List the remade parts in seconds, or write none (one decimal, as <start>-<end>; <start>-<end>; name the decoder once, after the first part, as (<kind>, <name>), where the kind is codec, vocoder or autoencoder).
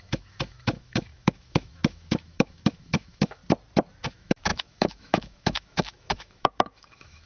0.0-3.4 (autoencoder, DAC-VAE); 4.1-7.3